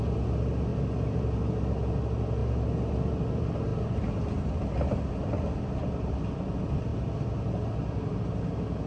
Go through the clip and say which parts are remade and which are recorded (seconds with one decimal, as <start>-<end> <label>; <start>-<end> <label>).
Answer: 0.0-8.9 recorded